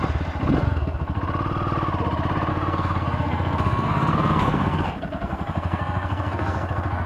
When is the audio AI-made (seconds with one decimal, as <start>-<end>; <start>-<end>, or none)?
0.6-1.2; 2.5-7.1